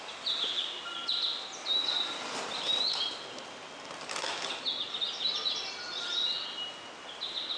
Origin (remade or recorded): recorded